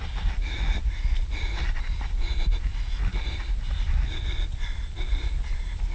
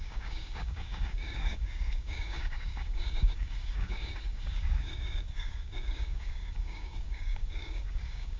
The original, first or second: first